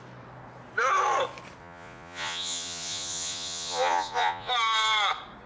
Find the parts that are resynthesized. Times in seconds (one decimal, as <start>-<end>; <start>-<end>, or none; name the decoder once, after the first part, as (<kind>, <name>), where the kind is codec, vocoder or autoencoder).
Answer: 1.6-4.5 (vocoder, Vocos)